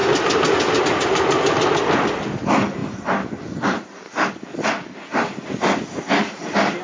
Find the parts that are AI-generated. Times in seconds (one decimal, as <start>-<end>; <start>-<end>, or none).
none